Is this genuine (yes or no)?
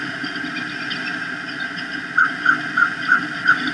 yes